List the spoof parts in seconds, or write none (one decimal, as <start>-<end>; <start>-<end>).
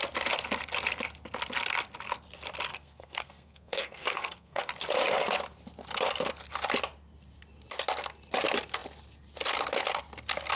2.7-4.6